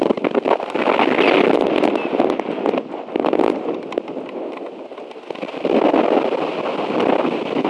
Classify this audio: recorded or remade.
recorded